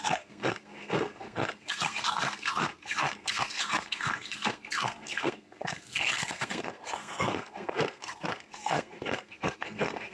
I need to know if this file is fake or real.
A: fake